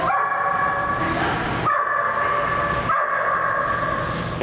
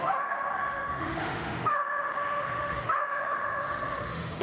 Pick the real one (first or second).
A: first